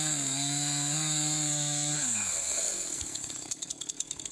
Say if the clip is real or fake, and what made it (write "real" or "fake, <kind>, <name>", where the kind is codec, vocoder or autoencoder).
fake, codec, SNAC